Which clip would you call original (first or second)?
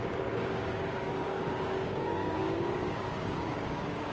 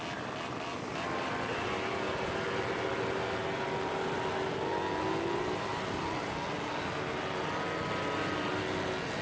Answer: second